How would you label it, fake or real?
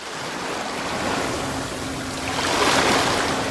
real